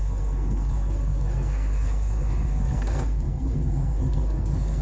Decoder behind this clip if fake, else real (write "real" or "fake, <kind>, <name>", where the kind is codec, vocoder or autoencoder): fake, codec, SNAC